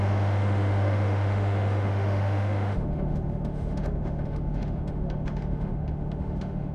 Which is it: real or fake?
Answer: fake